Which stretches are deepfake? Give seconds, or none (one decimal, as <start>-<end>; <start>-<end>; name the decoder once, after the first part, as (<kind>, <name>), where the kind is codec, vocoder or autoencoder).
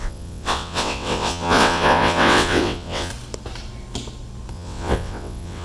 0.0-3.1 (vocoder, WaveNeXt); 4.5-5.6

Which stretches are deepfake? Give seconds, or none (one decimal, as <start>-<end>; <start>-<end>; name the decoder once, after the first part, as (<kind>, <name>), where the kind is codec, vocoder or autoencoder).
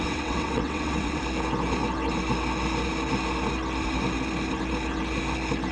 0.0-1.2 (vocoder, WaveNeXt)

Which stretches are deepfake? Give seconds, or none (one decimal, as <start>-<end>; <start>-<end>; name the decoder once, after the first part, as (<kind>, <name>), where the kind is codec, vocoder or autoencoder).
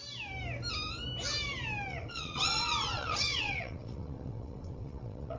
1.9-5.4 (vocoder, WaveNeXt)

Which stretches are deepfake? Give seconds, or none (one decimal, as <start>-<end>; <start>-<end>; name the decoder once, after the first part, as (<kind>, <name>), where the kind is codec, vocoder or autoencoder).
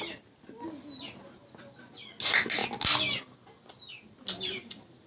none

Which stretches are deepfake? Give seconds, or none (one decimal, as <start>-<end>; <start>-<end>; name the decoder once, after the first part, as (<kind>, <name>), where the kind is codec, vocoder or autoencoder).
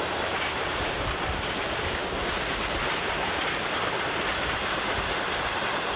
none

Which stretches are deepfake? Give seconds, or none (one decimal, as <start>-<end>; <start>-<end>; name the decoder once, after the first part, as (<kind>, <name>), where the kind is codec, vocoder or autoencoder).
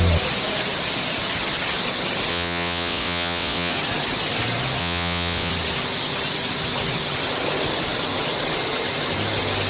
2.3-3.7 (vocoder, WaveNeXt); 4.8-5.5